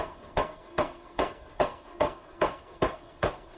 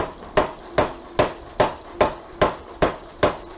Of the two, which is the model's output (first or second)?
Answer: first